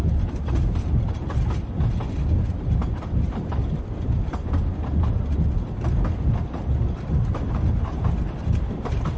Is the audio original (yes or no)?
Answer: yes